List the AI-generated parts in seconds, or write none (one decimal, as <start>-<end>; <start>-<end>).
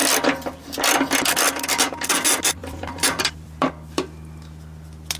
2.6-3.7